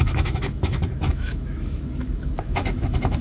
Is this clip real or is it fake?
fake